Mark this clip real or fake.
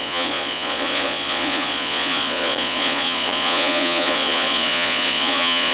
fake